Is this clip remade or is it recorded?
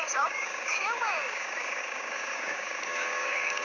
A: remade